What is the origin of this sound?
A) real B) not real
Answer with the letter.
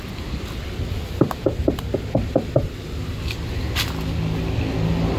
A